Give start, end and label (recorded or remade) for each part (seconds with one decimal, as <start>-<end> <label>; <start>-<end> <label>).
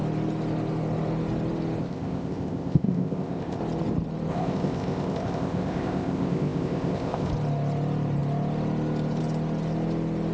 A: 0.0-1.8 recorded; 1.8-3.6 remade; 3.6-4.3 recorded; 4.3-7.3 remade; 7.3-10.3 recorded